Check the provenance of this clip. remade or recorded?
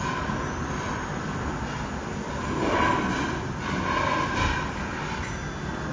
recorded